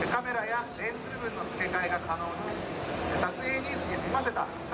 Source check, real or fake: real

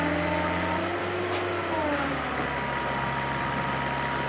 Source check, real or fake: real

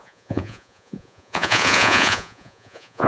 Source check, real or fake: fake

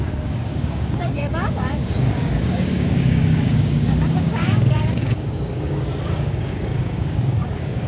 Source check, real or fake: fake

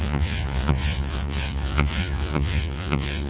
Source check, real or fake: fake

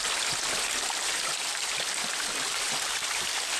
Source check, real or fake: fake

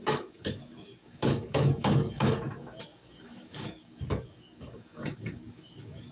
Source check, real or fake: fake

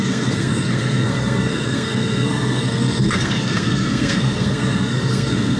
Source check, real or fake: fake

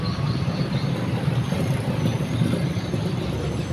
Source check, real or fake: real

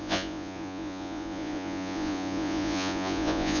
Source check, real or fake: fake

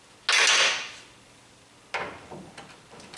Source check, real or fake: real